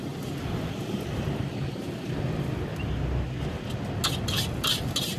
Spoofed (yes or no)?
no